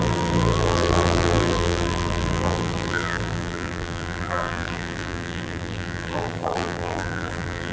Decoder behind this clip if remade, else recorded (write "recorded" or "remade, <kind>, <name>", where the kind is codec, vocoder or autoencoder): remade, vocoder, BigVGAN v2